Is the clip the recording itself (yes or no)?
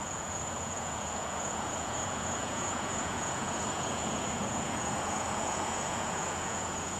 no